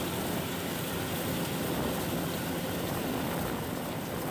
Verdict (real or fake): real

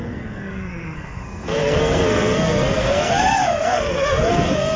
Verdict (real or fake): fake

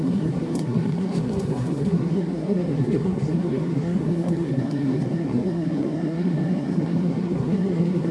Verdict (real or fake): fake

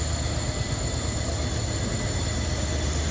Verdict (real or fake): real